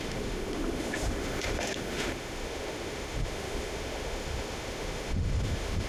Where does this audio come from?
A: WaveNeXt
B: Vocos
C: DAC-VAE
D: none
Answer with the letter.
C